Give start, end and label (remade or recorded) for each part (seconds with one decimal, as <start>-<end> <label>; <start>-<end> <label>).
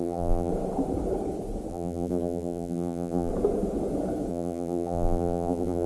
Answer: 0.0-0.5 remade; 0.5-1.7 recorded; 1.7-3.3 remade; 3.3-4.3 recorded; 4.3-5.9 remade